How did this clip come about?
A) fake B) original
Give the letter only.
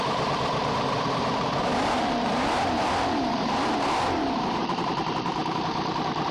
A